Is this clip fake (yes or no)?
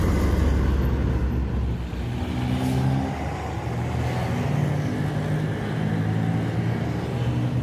no